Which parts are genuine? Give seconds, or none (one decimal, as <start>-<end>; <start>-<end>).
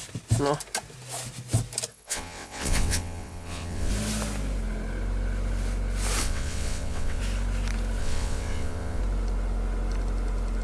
0.0-1.9; 3.9-6.2; 7.2-8.0; 9.0-10.6